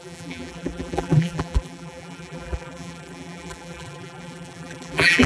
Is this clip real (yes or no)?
no